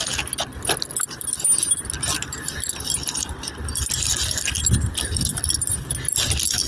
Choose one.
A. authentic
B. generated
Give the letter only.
A